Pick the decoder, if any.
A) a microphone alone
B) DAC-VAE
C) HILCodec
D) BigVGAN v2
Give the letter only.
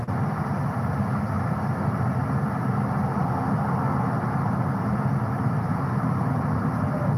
A